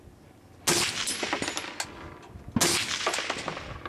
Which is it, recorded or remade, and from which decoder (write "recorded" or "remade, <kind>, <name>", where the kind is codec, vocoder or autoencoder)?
recorded